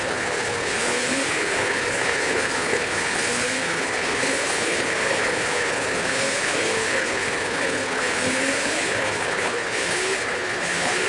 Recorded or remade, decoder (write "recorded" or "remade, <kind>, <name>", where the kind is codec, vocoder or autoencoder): remade, codec, HILCodec